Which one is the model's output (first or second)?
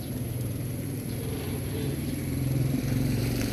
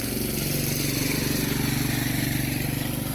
first